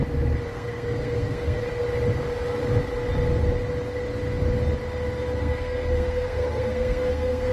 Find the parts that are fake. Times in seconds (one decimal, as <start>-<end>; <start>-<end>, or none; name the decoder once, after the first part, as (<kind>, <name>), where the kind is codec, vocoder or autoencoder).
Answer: 0.5-1.6 (codec, SNAC); 5.4-7.5